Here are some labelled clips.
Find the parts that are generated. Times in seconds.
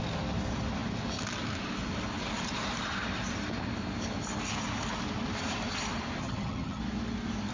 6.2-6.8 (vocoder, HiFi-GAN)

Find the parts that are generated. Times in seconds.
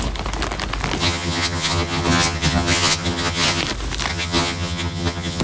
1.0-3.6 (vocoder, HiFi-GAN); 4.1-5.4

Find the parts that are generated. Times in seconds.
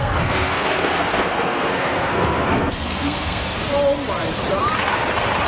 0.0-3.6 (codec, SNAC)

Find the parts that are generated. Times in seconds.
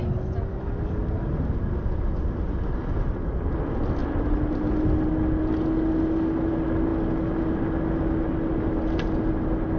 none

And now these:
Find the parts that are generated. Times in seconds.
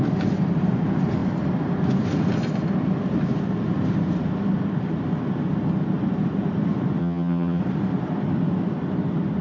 7.0-7.6 (vocoder, HiFi-GAN)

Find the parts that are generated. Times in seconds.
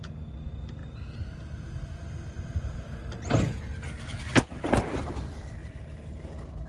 none